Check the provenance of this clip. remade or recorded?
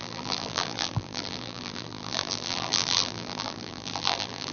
remade